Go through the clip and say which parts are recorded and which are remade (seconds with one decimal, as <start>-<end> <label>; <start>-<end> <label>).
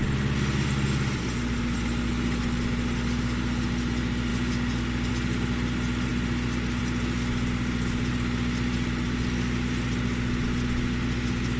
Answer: 0.0-11.6 recorded